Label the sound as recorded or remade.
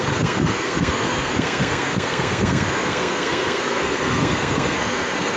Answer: remade